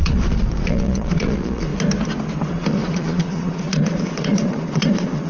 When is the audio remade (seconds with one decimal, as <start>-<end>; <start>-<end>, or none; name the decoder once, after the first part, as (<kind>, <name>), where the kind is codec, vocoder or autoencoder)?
0.0-1.7 (vocoder, Vocos); 2.5-5.3